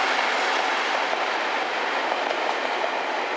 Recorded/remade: recorded